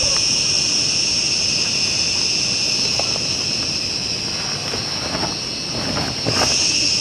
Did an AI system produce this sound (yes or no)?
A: no